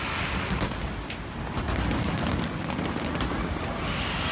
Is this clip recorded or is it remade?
recorded